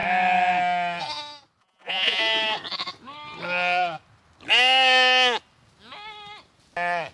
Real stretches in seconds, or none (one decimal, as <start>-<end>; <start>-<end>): 0.0-1.6; 2.2-7.1